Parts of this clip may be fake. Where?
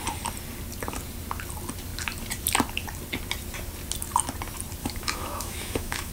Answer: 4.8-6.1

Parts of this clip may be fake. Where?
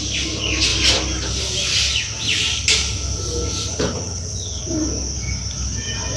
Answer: 3.7-4.6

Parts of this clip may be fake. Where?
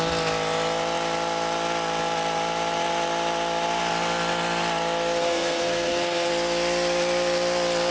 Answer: 5.2-6.3